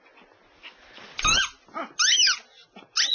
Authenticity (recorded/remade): recorded